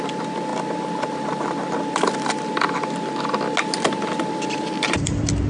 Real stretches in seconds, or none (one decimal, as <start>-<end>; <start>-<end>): 0.5-3.8